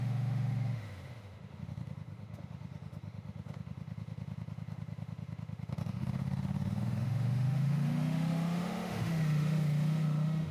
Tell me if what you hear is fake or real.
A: fake